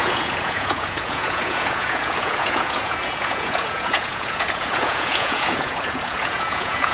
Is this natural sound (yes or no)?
no